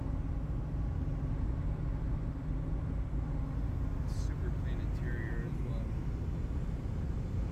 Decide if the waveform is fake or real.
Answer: real